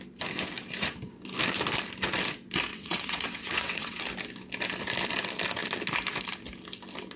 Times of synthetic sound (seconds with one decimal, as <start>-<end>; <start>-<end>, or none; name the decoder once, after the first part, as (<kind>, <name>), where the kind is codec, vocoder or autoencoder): 2.7-4.0 (vocoder, WaveNeXt)